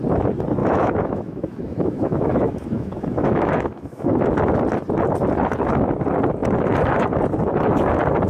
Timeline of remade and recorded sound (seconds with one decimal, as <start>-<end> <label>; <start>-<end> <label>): 0.0-0.6 recorded; 0.6-4.2 remade; 4.2-8.3 recorded